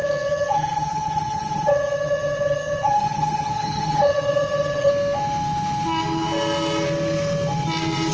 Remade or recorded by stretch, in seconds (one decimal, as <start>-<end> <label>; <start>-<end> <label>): 0.0-4.9 remade; 4.9-8.1 recorded